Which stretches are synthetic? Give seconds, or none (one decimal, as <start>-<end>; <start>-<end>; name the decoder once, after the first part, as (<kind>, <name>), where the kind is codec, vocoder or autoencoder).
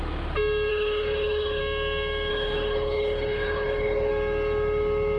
0.7-1.6 (codec, HILCodec); 2.3-4.1